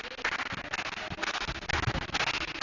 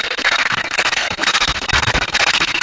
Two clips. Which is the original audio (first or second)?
first